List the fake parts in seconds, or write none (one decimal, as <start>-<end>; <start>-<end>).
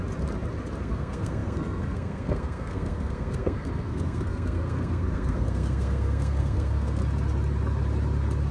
0.8-7.0